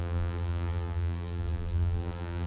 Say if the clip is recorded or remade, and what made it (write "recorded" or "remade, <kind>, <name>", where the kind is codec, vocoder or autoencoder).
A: remade, vocoder, BigVGAN v2